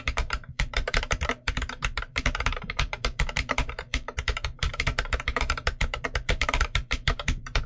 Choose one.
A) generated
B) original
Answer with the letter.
A